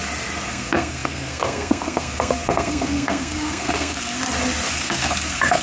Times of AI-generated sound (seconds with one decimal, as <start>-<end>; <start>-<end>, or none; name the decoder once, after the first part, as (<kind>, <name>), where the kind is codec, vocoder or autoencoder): 0.5-4.2 (codec, SNAC); 4.7-5.6